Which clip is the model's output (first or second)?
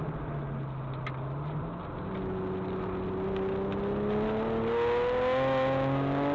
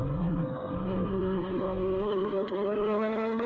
second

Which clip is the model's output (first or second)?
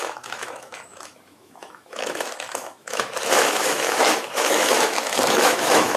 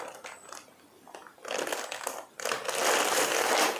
first